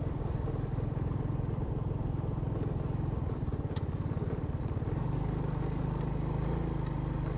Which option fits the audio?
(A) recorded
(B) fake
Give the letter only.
A